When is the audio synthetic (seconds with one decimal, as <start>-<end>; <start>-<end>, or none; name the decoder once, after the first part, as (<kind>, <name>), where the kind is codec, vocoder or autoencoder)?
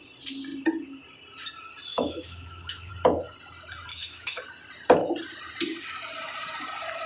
1.9-2.9 (autoencoder, DAC-VAE); 3.9-4.4